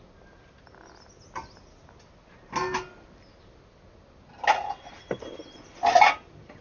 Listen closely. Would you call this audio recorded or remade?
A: recorded